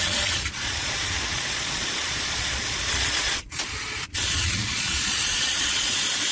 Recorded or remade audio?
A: remade